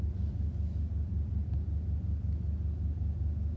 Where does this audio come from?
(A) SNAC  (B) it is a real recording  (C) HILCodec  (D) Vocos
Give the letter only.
B